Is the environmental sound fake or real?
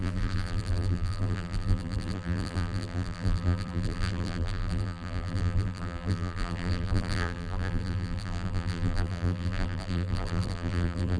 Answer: fake